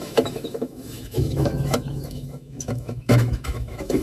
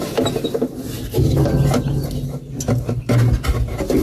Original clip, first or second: second